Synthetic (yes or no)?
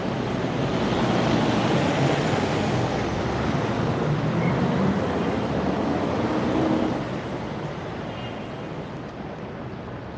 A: no